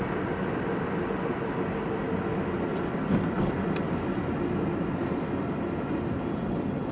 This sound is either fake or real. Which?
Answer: real